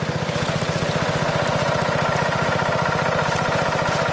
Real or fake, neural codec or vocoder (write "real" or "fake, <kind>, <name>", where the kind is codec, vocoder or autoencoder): real